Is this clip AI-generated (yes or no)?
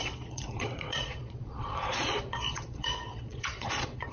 yes